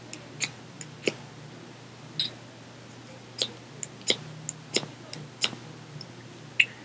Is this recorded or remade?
recorded